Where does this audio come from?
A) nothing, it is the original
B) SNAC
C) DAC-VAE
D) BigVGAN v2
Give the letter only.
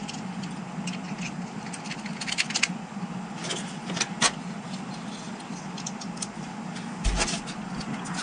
A